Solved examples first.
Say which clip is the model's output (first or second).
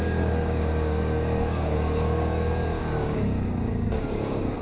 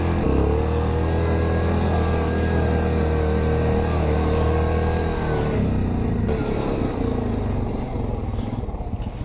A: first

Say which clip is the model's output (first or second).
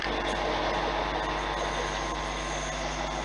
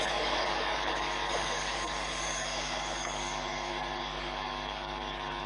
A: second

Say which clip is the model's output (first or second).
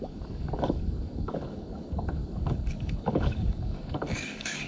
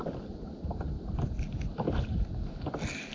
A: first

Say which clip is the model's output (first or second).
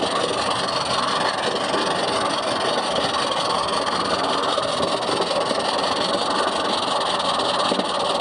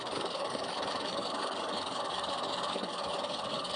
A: second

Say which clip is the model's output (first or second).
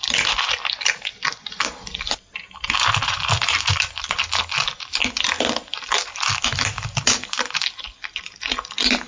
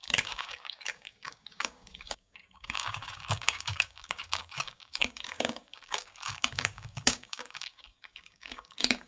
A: second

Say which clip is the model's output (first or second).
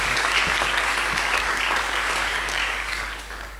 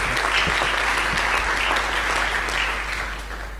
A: first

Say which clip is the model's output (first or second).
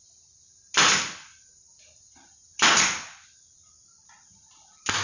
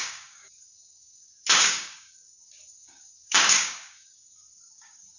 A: second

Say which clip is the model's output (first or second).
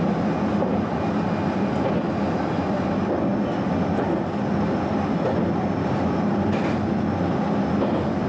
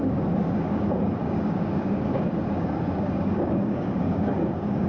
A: second